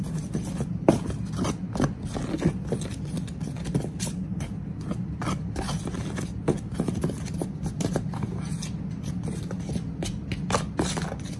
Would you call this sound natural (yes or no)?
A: yes